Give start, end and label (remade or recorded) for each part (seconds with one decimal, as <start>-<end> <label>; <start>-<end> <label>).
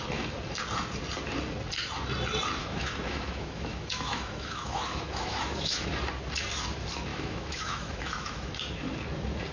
0.0-2.6 recorded; 2.6-5.9 remade; 5.9-7.1 recorded; 7.1-8.5 remade; 8.5-9.5 recorded